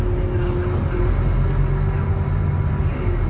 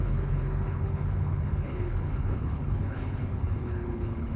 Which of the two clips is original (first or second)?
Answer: first